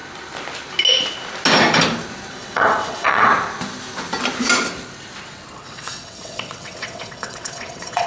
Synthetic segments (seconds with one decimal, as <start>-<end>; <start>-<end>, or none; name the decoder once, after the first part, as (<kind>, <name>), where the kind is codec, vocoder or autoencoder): 2.3-3.3 (vocoder, WaveNeXt); 5.6-8.1